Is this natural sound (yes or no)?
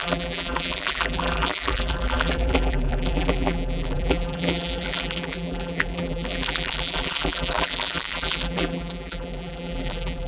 no